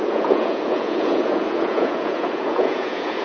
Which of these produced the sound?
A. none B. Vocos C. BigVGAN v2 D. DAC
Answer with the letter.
B